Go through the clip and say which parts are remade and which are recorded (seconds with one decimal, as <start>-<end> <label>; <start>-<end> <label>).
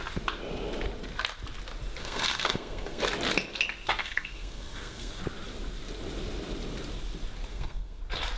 0.0-2.0 recorded; 2.0-3.0 remade; 3.0-4.0 recorded; 4.0-5.2 remade; 5.2-7.5 recorded; 7.5-8.0 remade; 8.0-8.4 recorded